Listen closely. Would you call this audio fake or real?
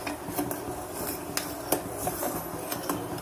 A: real